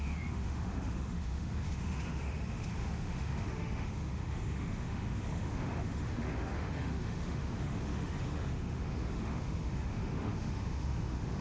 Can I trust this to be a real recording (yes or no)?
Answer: no